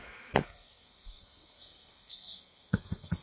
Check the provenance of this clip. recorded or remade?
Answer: remade